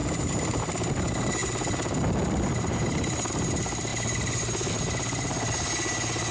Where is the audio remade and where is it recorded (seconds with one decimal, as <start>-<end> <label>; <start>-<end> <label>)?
0.0-0.6 remade; 0.6-6.3 recorded